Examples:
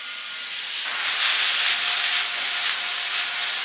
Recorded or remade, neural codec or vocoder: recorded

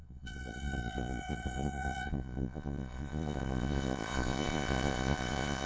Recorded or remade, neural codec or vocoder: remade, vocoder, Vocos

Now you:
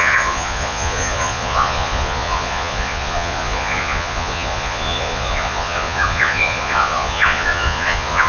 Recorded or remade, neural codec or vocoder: remade, vocoder, Vocos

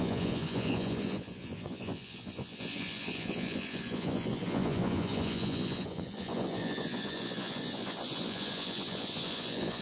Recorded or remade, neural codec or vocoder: remade, vocoder, Vocos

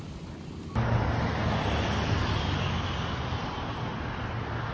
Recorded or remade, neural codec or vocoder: recorded